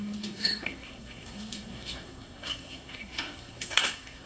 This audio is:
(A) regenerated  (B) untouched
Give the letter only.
A